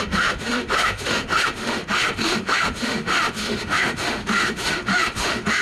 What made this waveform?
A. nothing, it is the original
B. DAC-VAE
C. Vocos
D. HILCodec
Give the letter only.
B